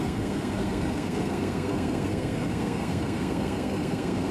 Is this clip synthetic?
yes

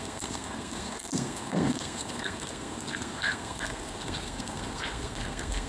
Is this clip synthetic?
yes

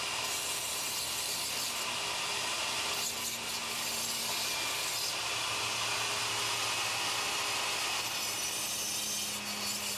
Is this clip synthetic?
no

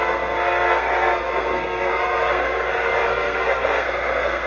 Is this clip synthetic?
yes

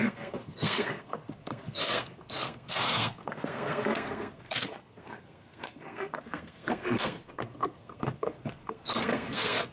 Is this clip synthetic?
yes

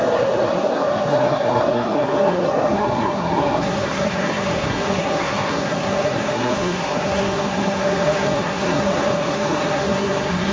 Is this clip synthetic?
yes